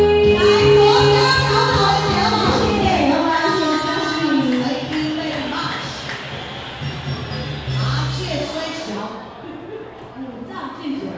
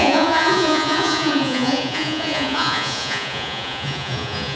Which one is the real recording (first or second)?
first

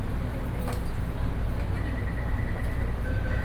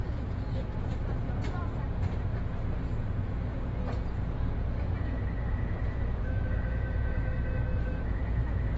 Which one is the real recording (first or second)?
first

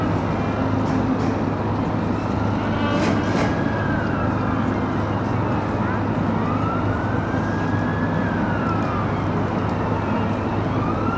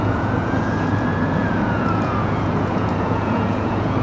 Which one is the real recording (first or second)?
first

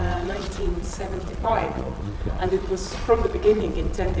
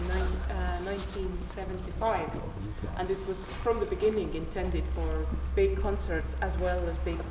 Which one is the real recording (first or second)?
second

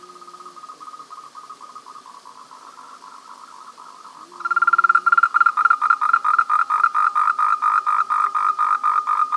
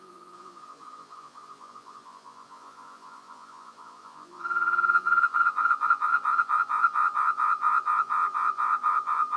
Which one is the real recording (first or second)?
first